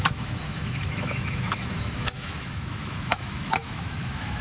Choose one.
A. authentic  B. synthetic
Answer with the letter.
B